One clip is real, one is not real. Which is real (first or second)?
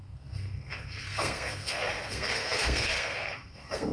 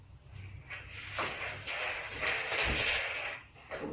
second